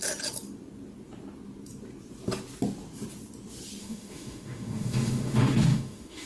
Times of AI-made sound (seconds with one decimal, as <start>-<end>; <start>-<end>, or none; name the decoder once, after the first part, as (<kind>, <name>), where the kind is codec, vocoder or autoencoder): 3.8-6.3 (autoencoder, DAC-VAE)